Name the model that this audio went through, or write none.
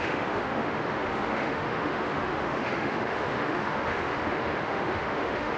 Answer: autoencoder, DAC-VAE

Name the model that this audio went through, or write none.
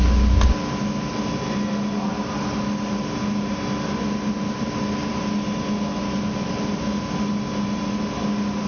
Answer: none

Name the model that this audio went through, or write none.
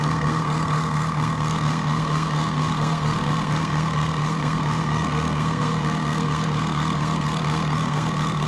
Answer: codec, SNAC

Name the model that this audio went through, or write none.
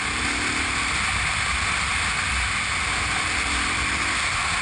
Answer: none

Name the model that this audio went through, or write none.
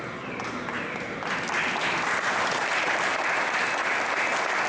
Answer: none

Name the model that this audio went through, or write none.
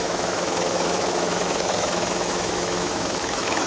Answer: autoencoder, DAC-VAE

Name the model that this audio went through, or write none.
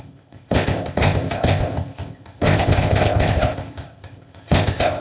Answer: codec, ZipCodec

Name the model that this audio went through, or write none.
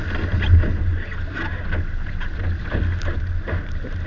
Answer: none